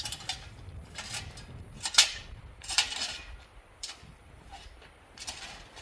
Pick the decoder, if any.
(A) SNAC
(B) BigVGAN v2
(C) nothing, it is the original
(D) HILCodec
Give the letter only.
B